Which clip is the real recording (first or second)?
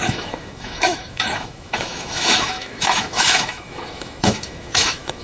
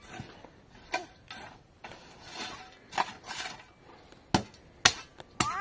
second